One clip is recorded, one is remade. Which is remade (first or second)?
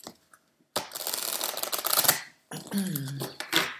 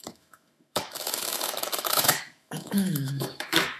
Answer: second